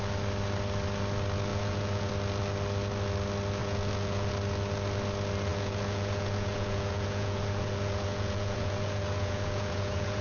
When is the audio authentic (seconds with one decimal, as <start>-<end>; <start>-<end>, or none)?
0.0-1.5; 2.1-3.6; 4.3-5.5